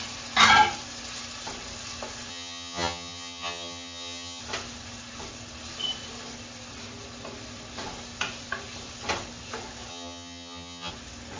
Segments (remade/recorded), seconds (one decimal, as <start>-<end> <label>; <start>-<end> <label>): 0.0-2.3 recorded; 2.3-4.4 remade; 4.4-9.9 recorded; 9.9-10.9 remade; 10.9-11.4 recorded